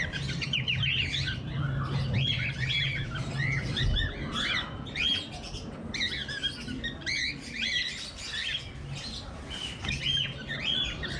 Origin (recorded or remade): recorded